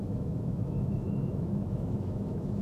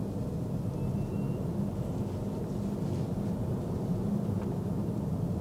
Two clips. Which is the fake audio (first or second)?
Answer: first